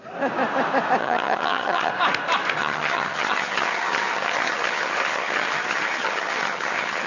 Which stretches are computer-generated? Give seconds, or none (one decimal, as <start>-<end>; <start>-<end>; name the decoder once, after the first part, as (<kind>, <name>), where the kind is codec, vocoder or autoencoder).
1.0-1.9 (vocoder, HiFi-GAN); 2.6-7.1